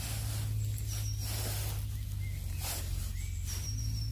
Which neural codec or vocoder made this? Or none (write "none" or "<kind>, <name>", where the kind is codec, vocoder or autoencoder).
none